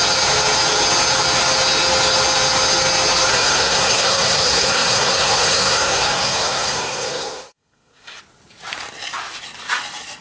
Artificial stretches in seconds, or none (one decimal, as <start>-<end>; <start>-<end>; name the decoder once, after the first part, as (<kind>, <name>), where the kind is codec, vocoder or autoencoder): 3.3-8.2 (codec, SNAC)